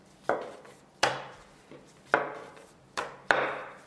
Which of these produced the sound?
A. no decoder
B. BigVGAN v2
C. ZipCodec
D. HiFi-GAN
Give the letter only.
B